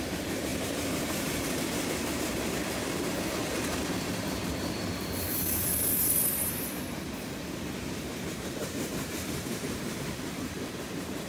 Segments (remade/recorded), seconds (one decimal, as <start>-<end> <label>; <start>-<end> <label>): 0.0-3.4 remade; 3.4-8.3 recorded; 8.3-11.3 remade